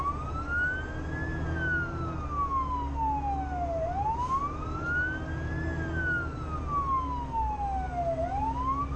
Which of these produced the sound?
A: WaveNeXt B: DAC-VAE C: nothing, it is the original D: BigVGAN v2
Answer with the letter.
C